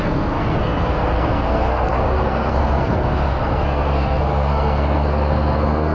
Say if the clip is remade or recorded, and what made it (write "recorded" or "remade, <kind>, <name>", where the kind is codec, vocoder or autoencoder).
remade, codec, SNAC